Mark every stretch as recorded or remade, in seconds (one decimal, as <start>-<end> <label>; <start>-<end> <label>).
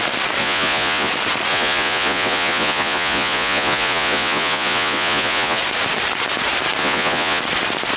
0.0-0.4 recorded; 0.4-1.1 remade; 1.1-1.5 recorded; 1.5-5.6 remade; 5.6-6.8 recorded; 6.8-7.4 remade; 7.4-8.0 recorded